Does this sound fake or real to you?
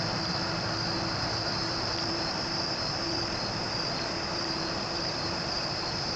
fake